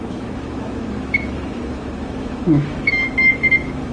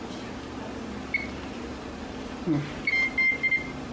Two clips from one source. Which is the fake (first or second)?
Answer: first